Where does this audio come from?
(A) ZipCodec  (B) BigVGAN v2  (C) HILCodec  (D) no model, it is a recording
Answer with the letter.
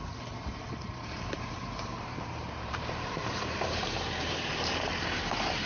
B